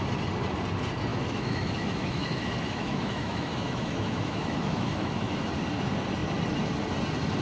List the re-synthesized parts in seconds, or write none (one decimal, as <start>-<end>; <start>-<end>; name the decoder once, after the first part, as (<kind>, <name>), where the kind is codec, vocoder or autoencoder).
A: 1.1-5.5 (autoencoder, DAC-VAE)